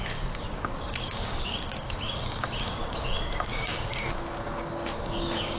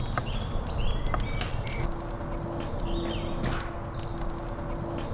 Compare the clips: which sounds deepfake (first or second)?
first